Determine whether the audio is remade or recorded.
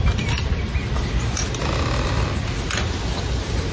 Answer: recorded